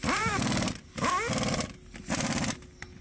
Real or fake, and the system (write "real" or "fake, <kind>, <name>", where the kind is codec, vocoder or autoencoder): real